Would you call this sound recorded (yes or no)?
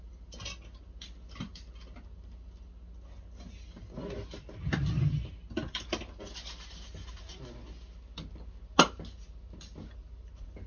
yes